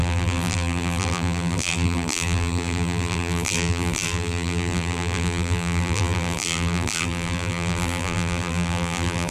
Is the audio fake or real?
fake